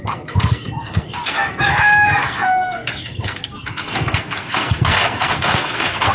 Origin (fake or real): fake